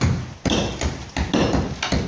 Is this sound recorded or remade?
recorded